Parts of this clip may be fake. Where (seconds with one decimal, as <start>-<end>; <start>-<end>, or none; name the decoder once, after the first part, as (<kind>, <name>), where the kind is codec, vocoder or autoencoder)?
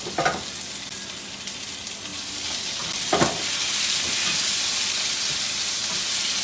2.1-5.9 (vocoder, BigVGAN v2)